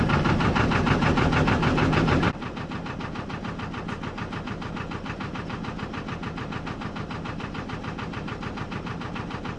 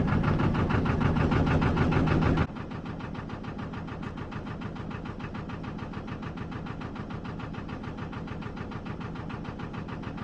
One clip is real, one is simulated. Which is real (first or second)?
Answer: second